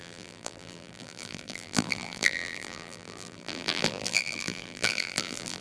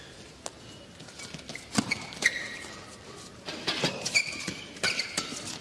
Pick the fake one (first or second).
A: first